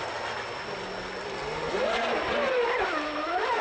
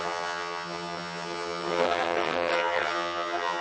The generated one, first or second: second